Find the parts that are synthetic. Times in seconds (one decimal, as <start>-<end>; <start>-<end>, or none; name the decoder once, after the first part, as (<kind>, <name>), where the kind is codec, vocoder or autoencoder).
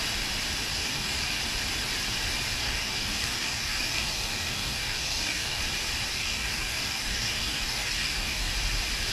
0.7-1.4 (codec, DAC); 2.6-5.6; 6.1-8.5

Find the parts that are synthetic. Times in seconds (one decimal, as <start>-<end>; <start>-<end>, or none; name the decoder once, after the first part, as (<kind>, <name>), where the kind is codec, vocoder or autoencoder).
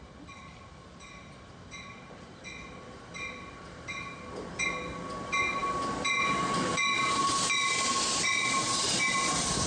none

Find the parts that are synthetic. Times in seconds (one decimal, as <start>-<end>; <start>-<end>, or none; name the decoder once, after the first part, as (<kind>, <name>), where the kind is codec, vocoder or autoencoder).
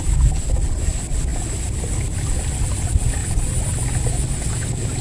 none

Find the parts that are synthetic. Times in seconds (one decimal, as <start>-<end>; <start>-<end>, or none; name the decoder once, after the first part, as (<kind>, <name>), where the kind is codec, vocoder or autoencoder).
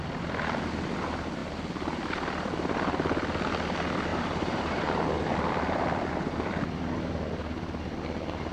4.1-5.0 (vocoder, BigVGAN v2)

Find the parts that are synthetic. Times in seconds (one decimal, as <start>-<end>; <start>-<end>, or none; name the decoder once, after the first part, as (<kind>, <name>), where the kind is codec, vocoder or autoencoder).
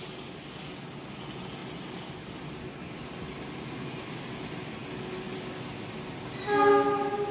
none